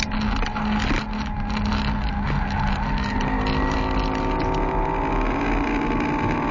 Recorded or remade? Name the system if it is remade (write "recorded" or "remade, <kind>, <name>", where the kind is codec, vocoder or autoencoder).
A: recorded